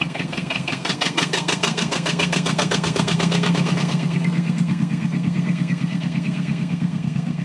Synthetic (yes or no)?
yes